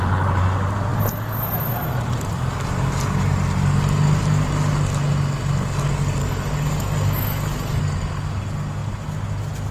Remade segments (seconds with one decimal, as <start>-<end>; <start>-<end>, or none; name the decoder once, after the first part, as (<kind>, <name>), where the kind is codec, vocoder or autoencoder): 6.2-7.8 (codec, DAC)